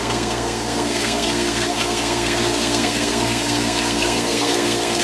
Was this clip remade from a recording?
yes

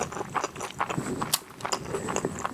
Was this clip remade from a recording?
no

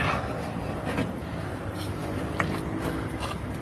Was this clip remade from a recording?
no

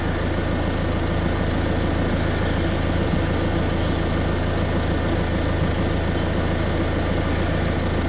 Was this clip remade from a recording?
no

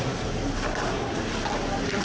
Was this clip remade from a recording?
no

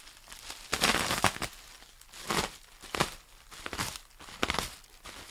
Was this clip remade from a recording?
no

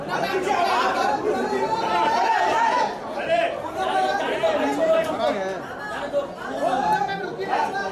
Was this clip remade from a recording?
yes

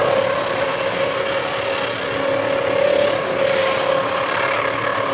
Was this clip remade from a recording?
no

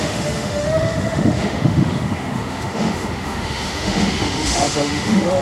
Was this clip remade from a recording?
yes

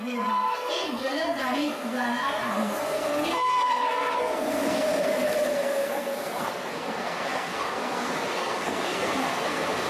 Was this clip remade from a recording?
yes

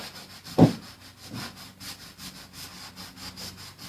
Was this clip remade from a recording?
no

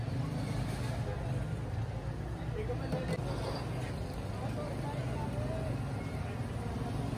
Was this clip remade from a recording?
no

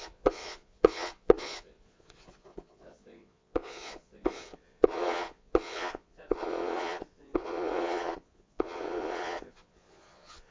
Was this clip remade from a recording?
yes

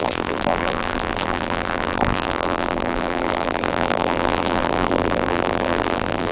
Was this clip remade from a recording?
yes